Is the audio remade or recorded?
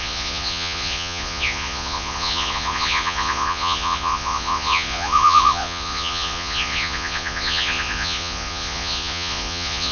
remade